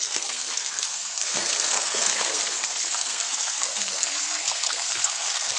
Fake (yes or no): yes